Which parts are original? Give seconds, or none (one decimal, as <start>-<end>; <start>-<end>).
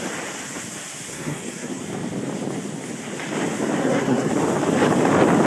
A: 0.0-1.1; 1.8-3.8; 4.3-5.5